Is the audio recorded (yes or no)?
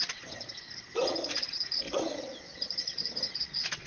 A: no